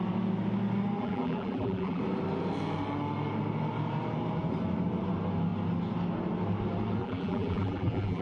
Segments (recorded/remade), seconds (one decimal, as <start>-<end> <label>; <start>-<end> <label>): 0.0-1.0 recorded; 1.0-2.0 remade; 2.0-7.0 recorded; 7.0-8.2 remade